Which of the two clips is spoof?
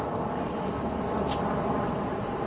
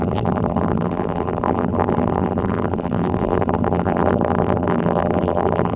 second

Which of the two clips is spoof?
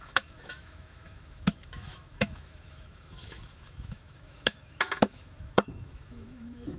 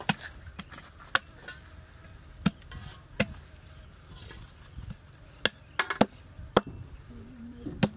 first